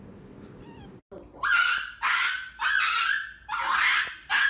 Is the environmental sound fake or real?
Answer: real